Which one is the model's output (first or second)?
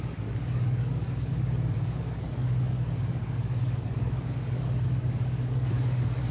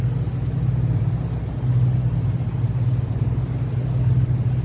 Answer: first